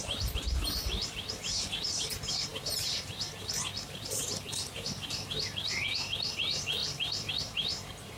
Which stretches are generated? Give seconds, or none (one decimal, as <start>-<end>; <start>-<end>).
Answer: 0.0-8.2